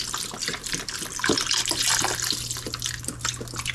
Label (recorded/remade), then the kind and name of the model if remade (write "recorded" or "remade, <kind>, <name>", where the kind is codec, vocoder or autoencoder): recorded